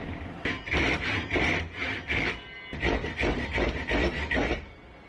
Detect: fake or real real